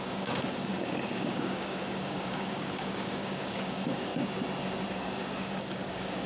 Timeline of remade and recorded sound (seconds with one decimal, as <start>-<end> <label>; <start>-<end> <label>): 0.0-4.1 remade; 4.1-4.9 recorded; 4.9-6.3 remade